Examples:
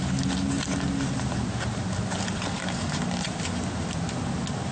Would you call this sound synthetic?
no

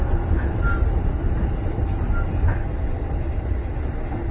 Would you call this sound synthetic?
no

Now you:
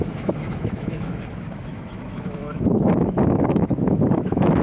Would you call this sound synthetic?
yes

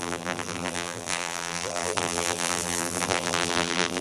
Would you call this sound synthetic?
yes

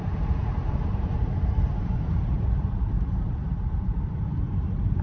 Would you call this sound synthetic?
yes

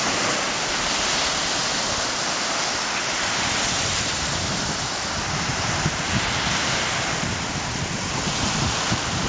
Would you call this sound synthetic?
no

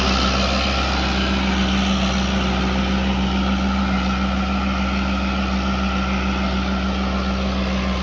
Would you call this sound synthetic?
no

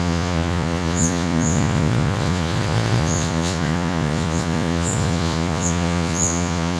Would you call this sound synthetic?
yes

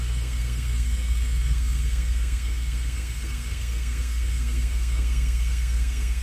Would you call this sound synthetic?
yes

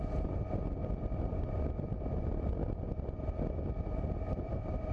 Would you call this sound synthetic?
no